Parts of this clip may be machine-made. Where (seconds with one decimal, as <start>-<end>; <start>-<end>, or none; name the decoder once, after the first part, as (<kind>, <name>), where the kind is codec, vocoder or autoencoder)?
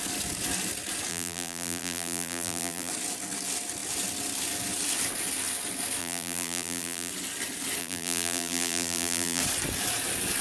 1.1-2.9 (vocoder, BigVGAN v2); 6.0-7.1; 7.8-9.4